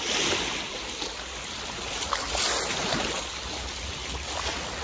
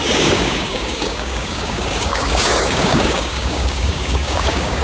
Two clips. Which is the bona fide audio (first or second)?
first